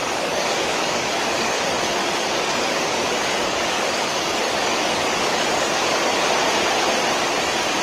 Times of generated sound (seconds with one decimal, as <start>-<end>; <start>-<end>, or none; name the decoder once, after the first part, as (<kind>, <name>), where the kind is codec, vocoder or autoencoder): 0.0-1.6 (codec, DAC); 2.0-6.2